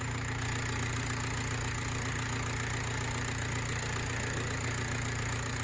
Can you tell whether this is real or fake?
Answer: real